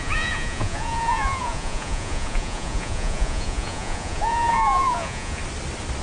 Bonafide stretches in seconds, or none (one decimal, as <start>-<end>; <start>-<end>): 5.4-6.0

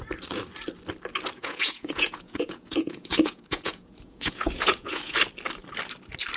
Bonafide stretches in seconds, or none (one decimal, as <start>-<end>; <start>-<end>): 0.0-1.4; 5.2-6.4

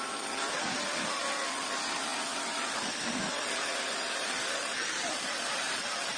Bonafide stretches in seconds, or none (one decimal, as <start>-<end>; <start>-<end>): 0.0-6.2

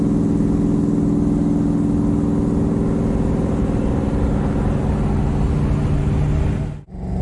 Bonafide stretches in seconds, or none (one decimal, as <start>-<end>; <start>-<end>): 0.0-7.2